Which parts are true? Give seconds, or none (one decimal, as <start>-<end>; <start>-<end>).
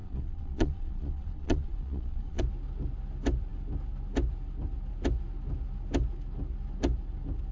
2.4-7.5